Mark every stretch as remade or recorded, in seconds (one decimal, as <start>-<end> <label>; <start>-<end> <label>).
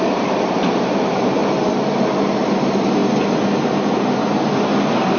0.0-1.4 remade; 1.4-2.5 recorded; 2.5-3.0 remade; 3.0-5.2 recorded